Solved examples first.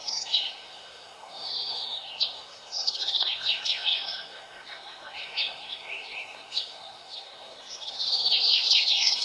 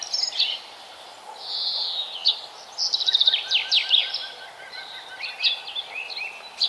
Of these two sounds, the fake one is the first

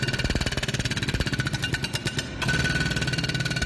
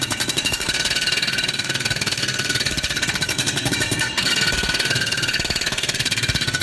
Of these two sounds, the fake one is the second